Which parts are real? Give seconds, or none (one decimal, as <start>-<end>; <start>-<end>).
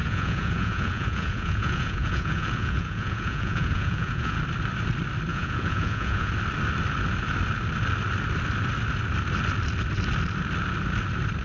4.4-5.3; 6.3-11.4